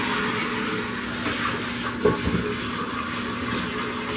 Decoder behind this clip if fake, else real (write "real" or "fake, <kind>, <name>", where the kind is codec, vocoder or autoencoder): real